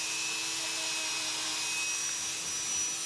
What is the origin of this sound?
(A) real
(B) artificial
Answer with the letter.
A